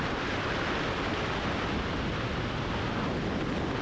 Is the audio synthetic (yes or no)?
no